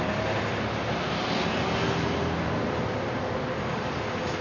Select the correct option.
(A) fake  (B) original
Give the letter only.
B